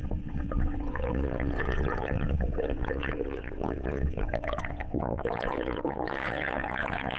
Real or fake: fake